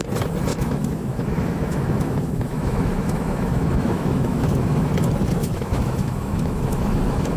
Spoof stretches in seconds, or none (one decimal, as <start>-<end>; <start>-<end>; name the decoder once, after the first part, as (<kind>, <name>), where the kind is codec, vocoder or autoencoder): 0.5-4.9 (autoencoder, DAC-VAE); 5.4-7.4